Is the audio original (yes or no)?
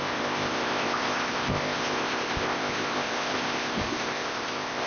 no